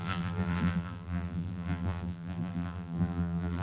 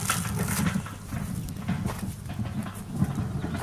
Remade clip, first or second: first